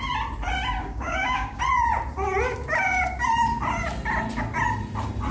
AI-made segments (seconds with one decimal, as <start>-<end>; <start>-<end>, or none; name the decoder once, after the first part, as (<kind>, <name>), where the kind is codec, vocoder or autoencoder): 0.8-1.6 (codec, DAC)